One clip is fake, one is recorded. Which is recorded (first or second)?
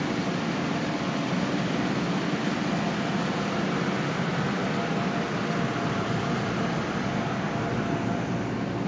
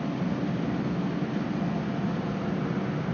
second